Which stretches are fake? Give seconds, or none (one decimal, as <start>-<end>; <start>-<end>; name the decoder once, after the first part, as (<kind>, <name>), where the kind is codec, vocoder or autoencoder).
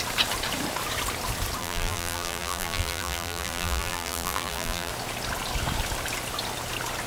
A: 1.6-4.9 (vocoder, BigVGAN v2)